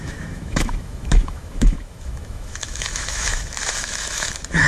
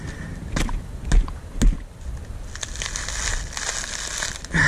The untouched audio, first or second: second